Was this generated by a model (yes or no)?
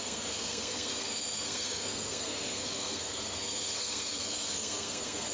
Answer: yes